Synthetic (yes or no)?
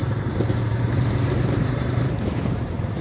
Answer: yes